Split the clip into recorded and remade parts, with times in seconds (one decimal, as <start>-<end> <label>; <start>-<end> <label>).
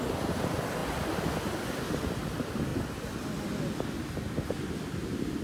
0.0-5.4 recorded